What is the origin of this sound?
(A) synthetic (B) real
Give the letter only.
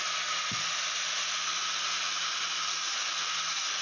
B